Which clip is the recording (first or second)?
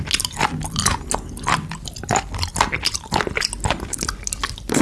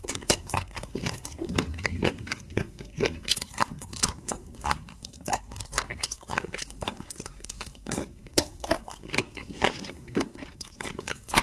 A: first